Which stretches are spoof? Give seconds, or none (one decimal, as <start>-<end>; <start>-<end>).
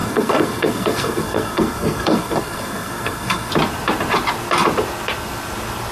0.0-3.5